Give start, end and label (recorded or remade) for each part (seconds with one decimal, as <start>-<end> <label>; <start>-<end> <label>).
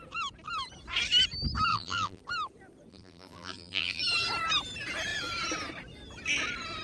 0.0-1.7 recorded; 1.7-2.2 remade; 2.2-2.9 recorded; 2.9-4.0 remade; 4.0-6.8 recorded